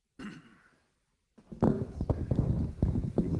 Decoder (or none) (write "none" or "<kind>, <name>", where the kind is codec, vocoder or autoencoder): none